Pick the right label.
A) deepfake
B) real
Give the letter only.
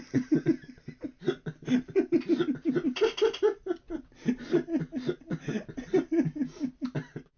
B